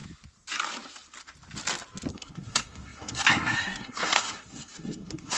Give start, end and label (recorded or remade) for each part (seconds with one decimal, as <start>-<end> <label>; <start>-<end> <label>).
0.0-2.1 recorded; 2.1-5.4 remade